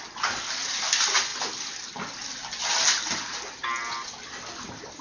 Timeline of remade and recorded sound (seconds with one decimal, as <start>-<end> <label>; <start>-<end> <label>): 0.0-5.0 recorded